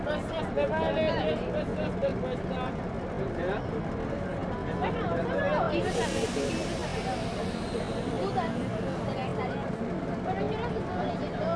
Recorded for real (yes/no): yes